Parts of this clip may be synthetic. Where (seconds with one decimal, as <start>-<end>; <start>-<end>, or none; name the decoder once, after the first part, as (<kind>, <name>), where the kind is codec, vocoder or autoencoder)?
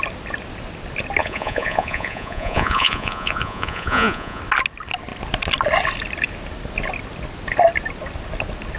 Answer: 1.2-4.4 (vocoder, Vocos)